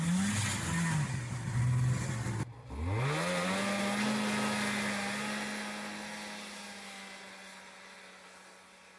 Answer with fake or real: real